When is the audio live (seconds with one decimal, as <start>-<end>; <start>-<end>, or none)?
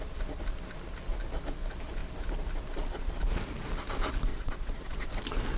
0.0-4.3; 5.1-5.6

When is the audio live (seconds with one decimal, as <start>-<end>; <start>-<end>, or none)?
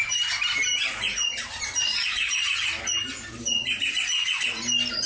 0.0-5.1